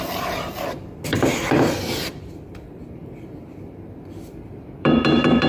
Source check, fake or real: fake